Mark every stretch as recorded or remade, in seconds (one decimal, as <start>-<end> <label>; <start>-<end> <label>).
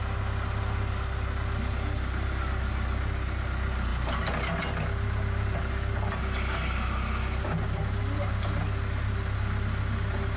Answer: 0.0-10.4 recorded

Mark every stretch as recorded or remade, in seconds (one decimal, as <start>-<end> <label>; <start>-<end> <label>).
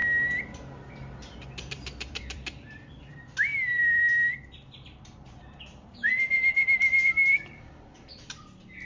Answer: 0.0-1.6 recorded; 1.6-8.9 remade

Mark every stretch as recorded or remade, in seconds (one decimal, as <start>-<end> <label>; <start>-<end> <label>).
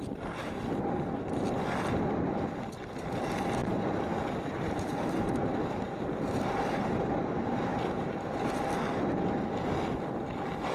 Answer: 0.0-3.6 recorded; 3.6-7.2 remade; 7.2-7.7 recorded; 7.7-8.6 remade; 8.6-10.7 recorded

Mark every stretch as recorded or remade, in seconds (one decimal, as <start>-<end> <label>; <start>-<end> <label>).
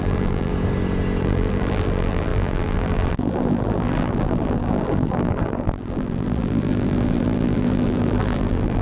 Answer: 0.0-0.5 remade; 0.5-1.2 recorded; 1.2-8.8 remade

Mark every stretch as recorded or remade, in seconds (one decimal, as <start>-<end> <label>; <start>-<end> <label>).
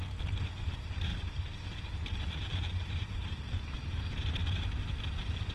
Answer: 0.0-1.1 recorded; 1.1-4.0 remade; 4.0-5.5 recorded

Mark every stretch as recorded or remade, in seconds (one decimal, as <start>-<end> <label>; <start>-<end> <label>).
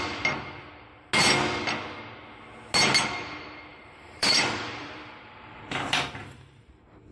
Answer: 0.0-3.7 recorded; 3.7-7.1 remade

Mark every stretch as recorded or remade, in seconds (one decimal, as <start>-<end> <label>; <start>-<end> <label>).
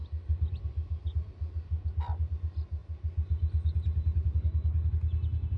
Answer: 0.0-5.6 recorded